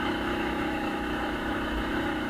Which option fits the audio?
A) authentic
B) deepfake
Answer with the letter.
B